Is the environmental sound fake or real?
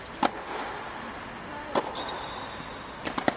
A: real